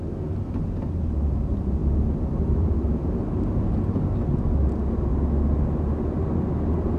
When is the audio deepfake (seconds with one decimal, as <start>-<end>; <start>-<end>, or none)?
none